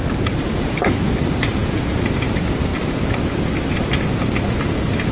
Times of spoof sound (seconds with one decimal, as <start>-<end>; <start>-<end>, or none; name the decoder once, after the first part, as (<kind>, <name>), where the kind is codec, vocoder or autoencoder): 1.6-2.1 (vocoder, Vocos)